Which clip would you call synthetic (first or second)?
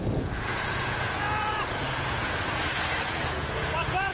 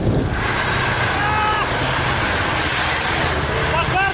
first